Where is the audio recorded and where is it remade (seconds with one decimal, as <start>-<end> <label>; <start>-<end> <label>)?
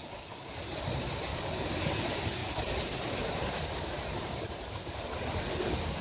0.0-0.7 remade; 0.7-1.3 recorded; 1.3-1.8 remade; 1.8-6.0 recorded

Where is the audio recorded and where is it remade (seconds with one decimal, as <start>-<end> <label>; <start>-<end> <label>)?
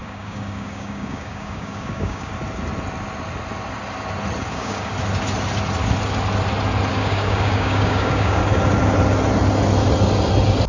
0.0-2.3 remade; 2.3-4.5 recorded; 4.5-4.9 remade; 4.9-6.9 recorded; 6.9-8.4 remade; 8.4-10.7 recorded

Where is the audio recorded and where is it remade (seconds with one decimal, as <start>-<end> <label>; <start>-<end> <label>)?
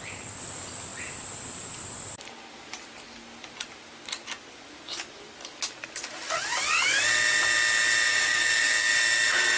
0.0-8.1 recorded; 8.1-8.9 remade; 8.9-9.6 recorded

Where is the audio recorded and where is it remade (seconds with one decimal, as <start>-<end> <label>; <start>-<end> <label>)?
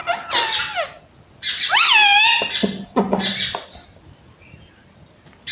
0.0-5.5 recorded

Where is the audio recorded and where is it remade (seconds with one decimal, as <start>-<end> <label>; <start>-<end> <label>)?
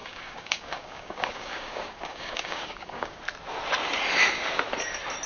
0.0-3.2 remade; 3.2-5.3 recorded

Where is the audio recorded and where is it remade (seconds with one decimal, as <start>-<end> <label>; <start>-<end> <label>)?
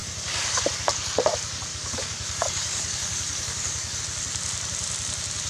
0.0-0.6 remade; 0.6-1.7 recorded; 1.7-4.0 remade; 4.0-5.5 recorded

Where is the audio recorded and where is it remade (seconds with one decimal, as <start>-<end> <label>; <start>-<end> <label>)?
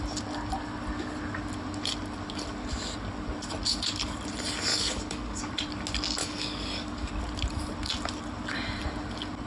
0.0-4.7 recorded; 4.7-5.4 remade; 5.4-6.2 recorded; 6.2-7.1 remade; 7.1-9.5 recorded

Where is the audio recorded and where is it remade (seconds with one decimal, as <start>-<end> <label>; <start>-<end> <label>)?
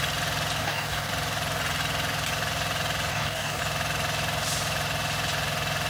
0.0-0.6 recorded; 0.6-1.1 remade; 1.1-3.1 recorded; 3.1-3.6 remade; 3.6-5.9 recorded